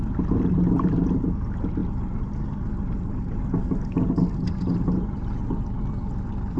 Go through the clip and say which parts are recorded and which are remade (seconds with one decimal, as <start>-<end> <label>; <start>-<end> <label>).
0.0-6.6 recorded